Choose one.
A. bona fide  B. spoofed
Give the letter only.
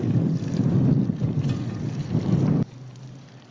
B